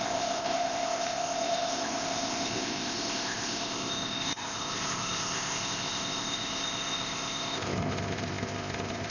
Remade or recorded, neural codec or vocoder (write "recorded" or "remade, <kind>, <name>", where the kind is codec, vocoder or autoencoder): remade, codec, ZipCodec